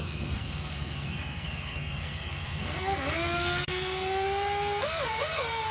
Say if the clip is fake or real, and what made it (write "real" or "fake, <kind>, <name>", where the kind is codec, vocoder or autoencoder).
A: fake, codec, SNAC